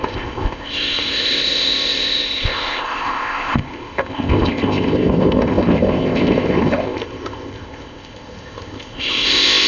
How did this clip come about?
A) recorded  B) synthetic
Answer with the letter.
B